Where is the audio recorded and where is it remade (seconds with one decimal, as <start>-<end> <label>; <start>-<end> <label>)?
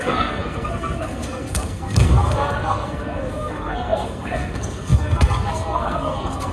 0.0-6.5 remade